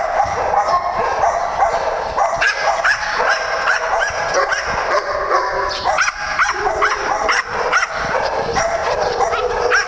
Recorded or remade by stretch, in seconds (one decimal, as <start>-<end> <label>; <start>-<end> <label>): 0.0-2.2 recorded; 2.2-4.2 remade; 4.2-8.8 recorded; 8.8-9.5 remade; 9.5-9.9 recorded